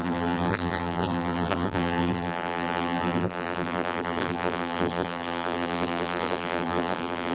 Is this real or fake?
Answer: fake